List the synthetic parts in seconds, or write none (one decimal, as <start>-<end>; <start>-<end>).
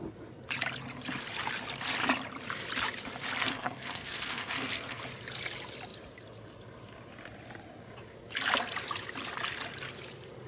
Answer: 3.4-5.0